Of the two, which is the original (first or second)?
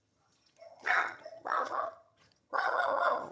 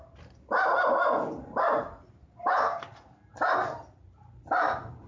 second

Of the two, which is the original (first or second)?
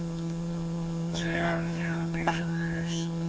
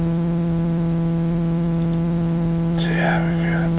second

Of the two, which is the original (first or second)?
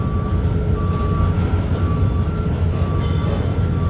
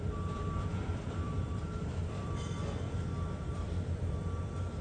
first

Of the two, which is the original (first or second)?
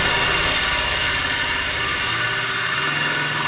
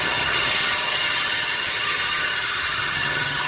first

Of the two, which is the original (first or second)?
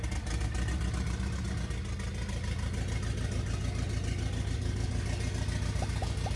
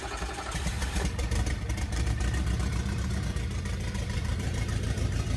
first